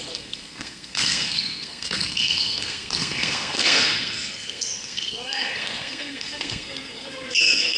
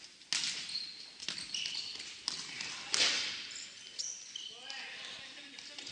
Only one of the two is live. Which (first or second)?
second